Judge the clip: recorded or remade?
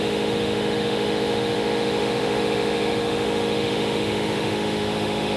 remade